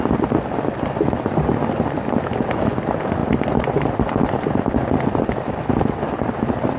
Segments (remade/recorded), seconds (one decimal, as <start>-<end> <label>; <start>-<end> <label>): 0.0-6.8 recorded